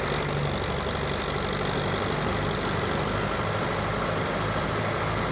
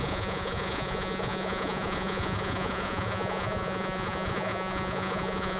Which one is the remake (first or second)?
second